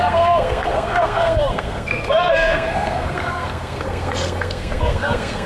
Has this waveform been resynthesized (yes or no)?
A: yes